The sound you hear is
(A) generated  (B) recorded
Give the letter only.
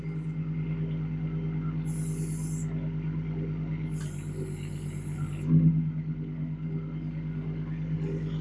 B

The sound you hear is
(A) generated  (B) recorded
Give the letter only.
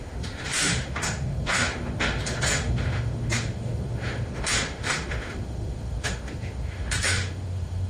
A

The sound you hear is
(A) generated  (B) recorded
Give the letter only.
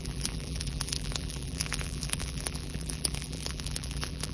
A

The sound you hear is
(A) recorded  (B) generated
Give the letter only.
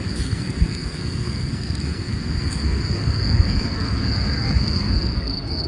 B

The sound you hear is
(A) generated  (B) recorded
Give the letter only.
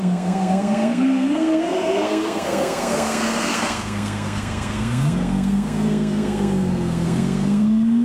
A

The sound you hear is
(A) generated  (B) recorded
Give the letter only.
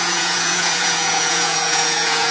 A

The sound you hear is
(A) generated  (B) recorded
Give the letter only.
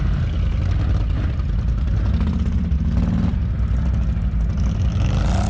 B